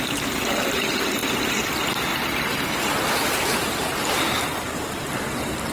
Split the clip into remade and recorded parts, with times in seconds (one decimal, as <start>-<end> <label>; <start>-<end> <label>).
0.0-1.2 remade; 1.2-1.8 recorded; 1.8-5.7 remade